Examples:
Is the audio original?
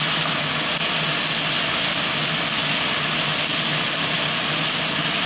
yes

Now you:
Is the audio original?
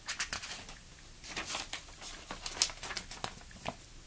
yes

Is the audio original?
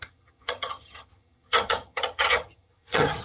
no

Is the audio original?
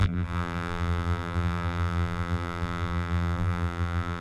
no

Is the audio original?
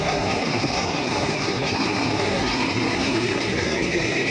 no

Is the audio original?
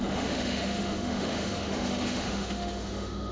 no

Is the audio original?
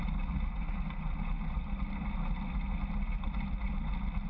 yes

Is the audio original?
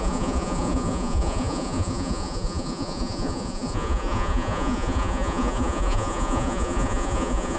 no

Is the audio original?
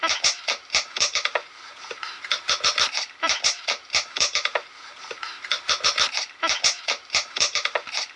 no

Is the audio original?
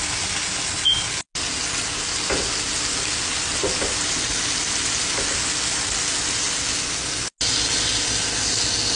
yes